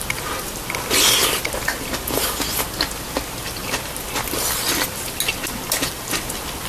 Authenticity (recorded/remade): recorded